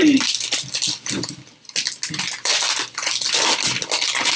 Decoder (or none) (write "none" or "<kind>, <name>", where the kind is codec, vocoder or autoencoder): none